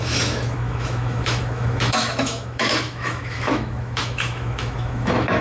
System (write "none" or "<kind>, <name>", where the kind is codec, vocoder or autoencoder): autoencoder, DAC-VAE